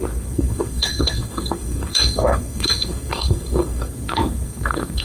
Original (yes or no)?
no